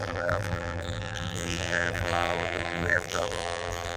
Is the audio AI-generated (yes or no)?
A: yes